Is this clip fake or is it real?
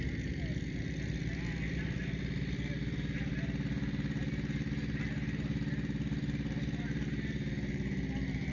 real